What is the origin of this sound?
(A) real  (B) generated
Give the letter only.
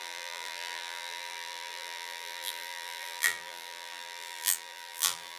B